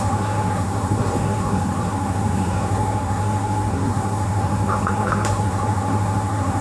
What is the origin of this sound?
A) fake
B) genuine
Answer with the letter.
A